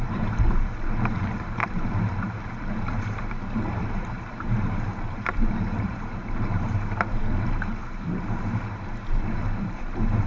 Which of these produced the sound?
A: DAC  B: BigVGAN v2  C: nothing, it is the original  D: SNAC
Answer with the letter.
B